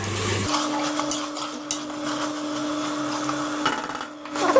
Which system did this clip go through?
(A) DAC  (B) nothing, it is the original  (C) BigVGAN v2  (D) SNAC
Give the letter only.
B